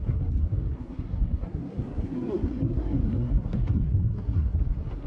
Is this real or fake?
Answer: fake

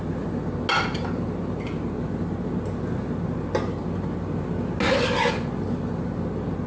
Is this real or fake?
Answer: real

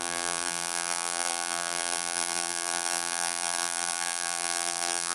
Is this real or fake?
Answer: fake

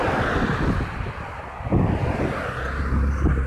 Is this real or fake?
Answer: real